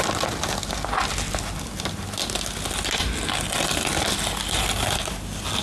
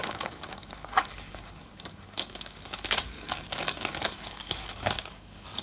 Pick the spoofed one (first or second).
second